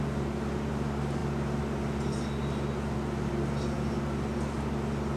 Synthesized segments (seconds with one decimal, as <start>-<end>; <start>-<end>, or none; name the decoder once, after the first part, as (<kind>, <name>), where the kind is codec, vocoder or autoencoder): none

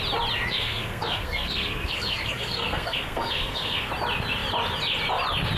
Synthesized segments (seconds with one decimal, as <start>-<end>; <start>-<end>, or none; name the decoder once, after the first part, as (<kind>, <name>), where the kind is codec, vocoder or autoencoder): 0.5-3.9 (codec, SNAC)

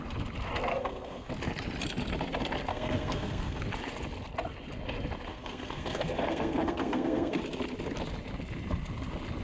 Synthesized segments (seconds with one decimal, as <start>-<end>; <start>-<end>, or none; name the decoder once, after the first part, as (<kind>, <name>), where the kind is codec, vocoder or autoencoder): 0.7-1.3 (codec, SNAC); 2.7-3.6; 5.3-7.4

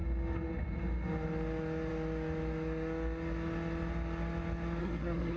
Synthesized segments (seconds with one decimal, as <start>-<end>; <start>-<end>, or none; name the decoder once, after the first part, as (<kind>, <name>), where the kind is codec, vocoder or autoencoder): 4.8-5.4 (codec, SNAC)

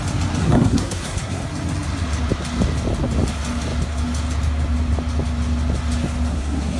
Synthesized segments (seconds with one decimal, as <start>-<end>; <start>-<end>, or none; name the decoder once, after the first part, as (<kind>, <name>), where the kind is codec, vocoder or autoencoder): 0.4-1.4 (codec, SNAC); 6.3-6.8

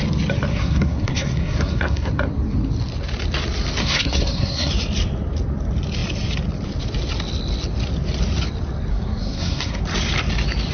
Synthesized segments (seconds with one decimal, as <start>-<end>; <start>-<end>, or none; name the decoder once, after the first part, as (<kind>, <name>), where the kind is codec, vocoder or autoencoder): 0.5-2.1 (codec, SNAC); 3.8-4.7; 8.9-9.8

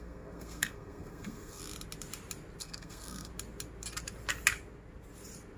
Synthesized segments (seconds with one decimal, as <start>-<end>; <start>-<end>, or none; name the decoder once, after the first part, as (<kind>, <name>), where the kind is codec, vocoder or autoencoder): 0.0-1.6 (codec, SNAC); 2.6-3.3

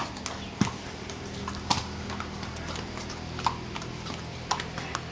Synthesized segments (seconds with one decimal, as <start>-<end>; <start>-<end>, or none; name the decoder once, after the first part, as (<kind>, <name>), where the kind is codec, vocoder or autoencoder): none